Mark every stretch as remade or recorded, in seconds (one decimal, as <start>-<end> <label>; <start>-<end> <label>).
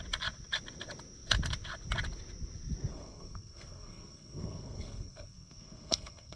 0.0-2.9 recorded; 2.9-6.4 remade